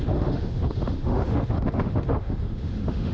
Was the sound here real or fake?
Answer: fake